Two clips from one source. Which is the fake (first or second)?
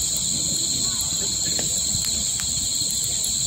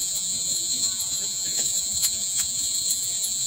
second